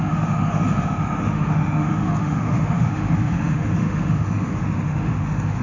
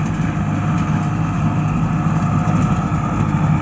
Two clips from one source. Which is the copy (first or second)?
first